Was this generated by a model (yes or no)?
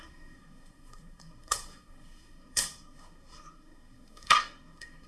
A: yes